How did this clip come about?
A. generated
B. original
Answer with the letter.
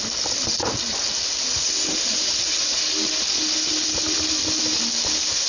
B